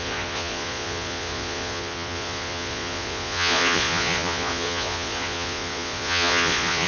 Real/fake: fake